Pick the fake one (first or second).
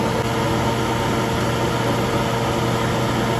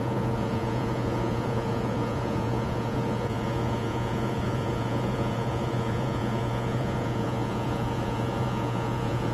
second